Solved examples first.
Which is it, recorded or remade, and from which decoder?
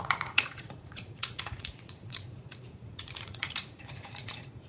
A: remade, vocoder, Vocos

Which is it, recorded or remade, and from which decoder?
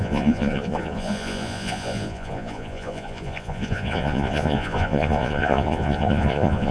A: remade, vocoder, Vocos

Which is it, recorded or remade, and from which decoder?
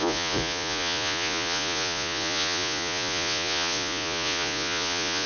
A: remade, vocoder, Vocos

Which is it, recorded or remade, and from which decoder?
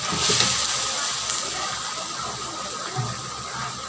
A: recorded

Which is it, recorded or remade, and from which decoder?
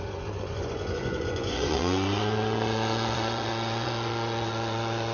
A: remade, vocoder, Vocos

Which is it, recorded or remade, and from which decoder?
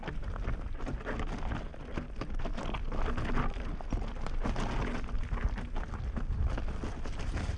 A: recorded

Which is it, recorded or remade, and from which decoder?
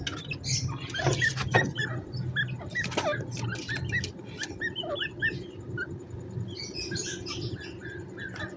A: recorded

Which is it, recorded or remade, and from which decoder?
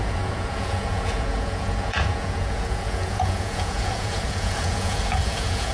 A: remade, vocoder, Vocos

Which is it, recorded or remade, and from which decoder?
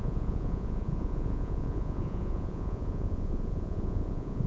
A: remade, vocoder, Vocos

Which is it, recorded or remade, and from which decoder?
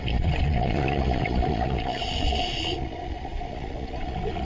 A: remade, vocoder, Vocos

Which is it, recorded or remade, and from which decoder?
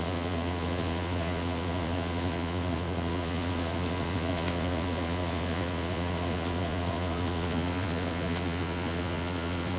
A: remade, vocoder, Vocos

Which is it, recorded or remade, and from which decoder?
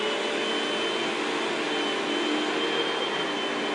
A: recorded